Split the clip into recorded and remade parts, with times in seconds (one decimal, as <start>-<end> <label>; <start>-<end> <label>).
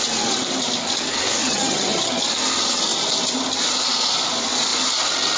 0.0-1.4 recorded; 1.4-2.1 remade; 2.1-5.4 recorded